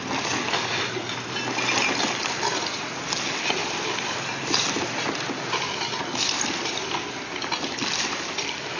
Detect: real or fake real